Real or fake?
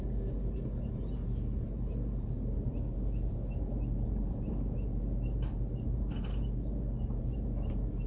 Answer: fake